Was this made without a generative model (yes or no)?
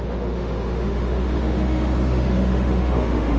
no